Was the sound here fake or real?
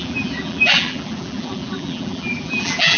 fake